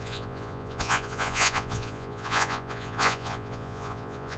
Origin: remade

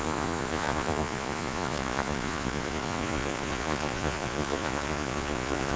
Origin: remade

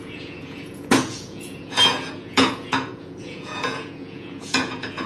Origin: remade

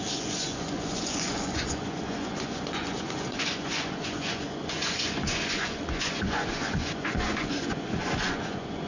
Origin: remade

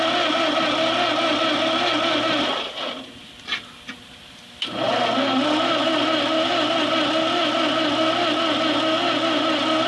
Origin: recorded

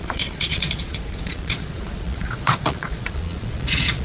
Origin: remade